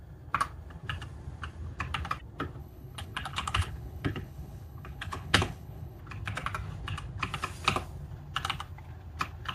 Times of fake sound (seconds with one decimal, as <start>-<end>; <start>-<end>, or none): 2.6-6.0